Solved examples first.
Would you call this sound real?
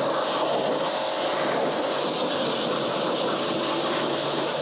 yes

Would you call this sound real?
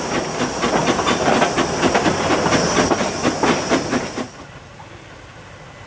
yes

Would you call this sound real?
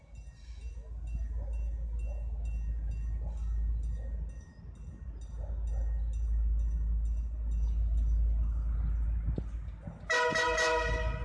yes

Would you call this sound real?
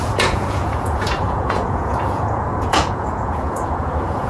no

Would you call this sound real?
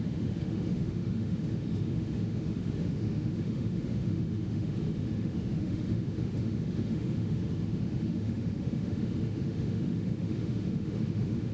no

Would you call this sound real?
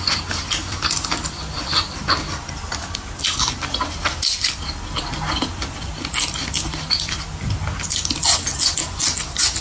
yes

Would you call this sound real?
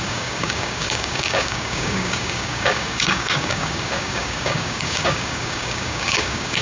no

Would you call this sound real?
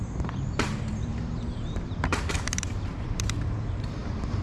no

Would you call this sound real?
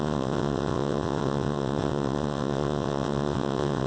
no